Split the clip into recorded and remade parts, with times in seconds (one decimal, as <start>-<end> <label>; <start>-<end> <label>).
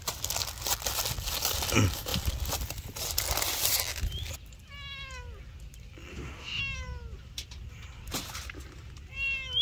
0.0-6.1 recorded; 6.1-6.6 remade; 6.6-9.6 recorded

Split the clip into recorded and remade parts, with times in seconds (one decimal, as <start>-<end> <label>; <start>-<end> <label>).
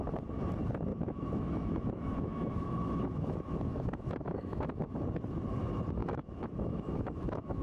0.0-0.9 recorded; 0.9-4.9 remade; 4.9-6.0 recorded; 6.0-7.6 remade